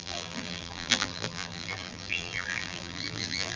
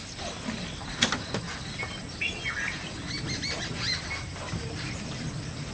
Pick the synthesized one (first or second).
first